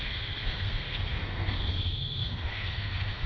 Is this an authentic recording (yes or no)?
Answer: no